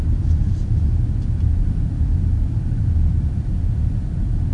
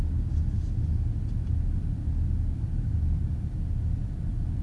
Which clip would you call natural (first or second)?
second